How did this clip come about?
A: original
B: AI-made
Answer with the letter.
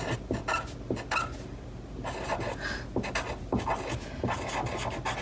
A